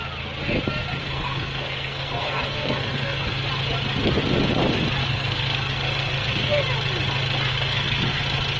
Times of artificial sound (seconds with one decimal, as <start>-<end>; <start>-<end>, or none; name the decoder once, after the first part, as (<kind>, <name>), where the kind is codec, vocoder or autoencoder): 1.0-3.5 (codec, SNAC); 5.0-6.6; 7.5-8.2